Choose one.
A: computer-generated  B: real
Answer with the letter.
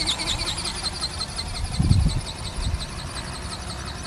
B